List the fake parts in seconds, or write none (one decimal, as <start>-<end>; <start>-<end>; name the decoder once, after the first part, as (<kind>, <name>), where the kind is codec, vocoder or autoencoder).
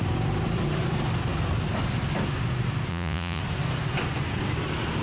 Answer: 2.9-3.4 (vocoder, Vocos)